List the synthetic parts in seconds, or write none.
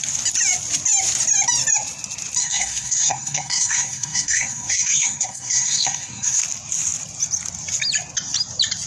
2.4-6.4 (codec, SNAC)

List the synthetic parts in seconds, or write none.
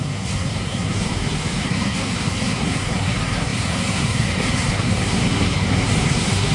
0.0-6.5 (codec, SNAC)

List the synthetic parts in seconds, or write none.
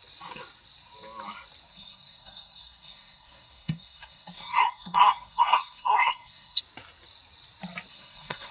1.7-6.6 (codec, SNAC); 7.9-8.5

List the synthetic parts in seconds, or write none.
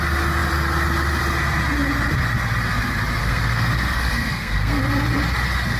3.2-4.8 (codec, SNAC)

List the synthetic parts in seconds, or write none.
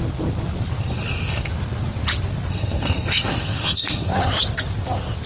0.8-1.5 (codec, SNAC); 2.5-4.1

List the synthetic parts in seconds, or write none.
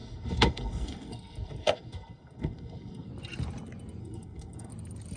0.0-3.1 (codec, SNAC); 4.0-4.7